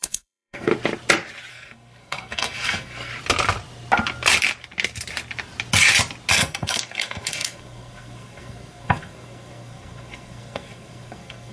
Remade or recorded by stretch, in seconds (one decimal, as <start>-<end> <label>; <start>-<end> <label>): 0.0-0.7 remade; 0.7-1.5 recorded; 1.5-3.1 remade; 3.1-6.3 recorded; 6.3-11.5 remade